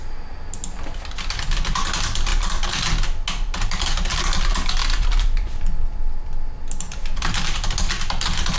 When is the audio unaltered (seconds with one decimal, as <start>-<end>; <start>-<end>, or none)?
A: 0.0-4.8; 5.6-8.6